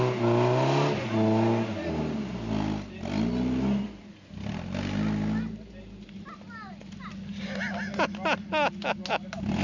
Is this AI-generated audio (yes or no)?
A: no